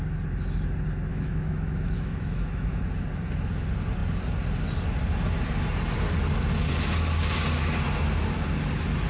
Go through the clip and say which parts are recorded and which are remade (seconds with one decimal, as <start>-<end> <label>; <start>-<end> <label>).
0.0-1.1 recorded; 1.1-2.8 remade; 2.8-9.1 recorded